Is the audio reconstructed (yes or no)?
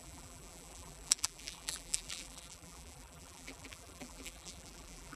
yes